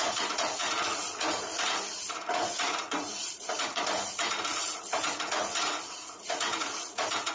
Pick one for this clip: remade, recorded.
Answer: remade